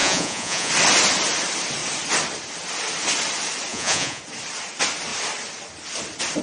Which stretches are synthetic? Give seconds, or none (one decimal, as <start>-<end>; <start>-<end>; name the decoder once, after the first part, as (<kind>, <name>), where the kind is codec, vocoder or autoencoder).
0.0-0.7 (vocoder, Vocos); 3.7-4.2

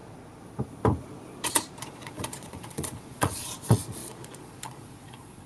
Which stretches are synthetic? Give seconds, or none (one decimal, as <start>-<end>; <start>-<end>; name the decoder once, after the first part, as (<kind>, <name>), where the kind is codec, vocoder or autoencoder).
1.8-5.5 (vocoder, Vocos)